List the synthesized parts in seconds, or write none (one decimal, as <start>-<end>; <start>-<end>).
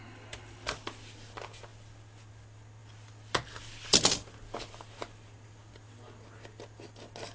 none